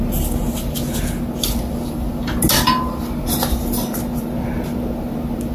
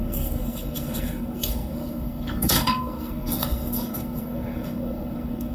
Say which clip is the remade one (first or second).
second